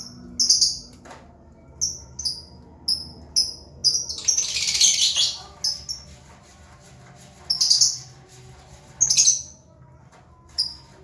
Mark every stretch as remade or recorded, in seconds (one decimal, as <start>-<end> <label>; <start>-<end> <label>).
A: 0.0-11.0 recorded